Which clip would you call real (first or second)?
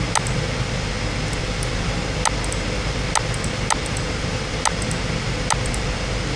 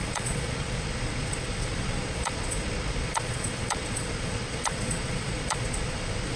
first